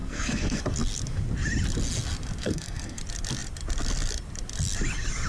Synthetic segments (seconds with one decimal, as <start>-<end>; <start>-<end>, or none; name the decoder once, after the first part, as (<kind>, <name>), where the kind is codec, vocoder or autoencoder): 0.0-0.6 (codec, SNAC); 2.4-3.0

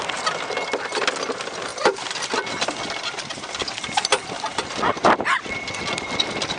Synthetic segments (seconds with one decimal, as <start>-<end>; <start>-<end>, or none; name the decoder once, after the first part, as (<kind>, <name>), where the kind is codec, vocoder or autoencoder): none